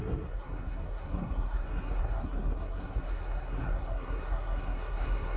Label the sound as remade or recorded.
remade